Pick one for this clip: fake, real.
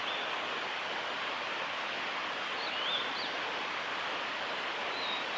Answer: real